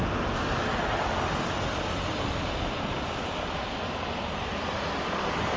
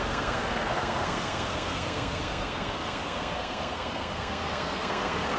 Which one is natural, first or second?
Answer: first